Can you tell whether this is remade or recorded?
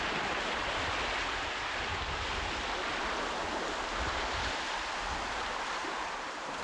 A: recorded